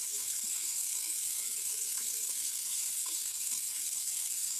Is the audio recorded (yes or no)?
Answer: no